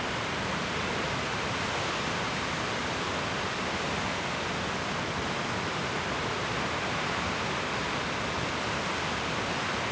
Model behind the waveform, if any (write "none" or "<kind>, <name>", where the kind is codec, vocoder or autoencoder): none